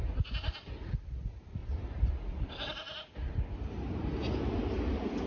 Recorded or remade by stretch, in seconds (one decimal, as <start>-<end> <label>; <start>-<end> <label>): 0.0-5.3 recorded

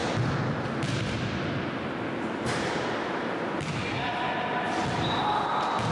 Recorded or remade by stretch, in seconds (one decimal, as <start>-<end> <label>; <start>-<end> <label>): 0.0-5.9 recorded

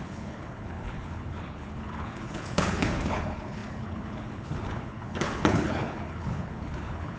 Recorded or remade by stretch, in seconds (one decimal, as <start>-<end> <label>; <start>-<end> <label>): 0.0-7.2 remade

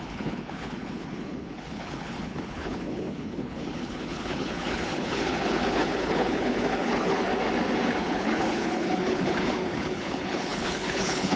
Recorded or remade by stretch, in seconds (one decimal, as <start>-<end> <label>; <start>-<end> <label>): 0.0-7.3 remade; 7.3-8.0 recorded; 8.0-11.4 remade

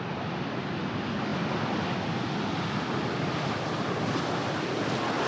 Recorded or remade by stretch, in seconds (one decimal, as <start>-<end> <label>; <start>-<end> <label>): 0.0-5.3 recorded